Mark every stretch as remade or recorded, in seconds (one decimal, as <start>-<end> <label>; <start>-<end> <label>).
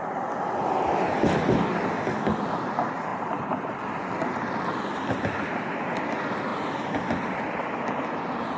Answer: 0.0-3.1 recorded; 3.1-4.0 remade; 4.0-8.6 recorded